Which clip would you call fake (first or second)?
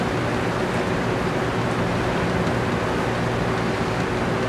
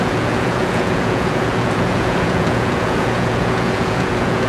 second